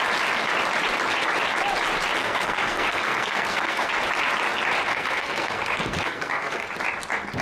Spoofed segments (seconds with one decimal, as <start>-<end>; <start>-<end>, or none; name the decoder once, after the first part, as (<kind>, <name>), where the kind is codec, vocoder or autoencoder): 2.2-3.9 (codec, SNAC); 4.9-6.7